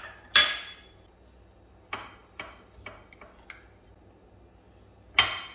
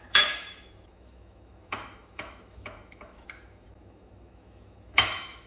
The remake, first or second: second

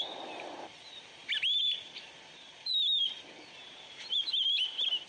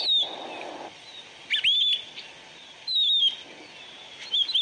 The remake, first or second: first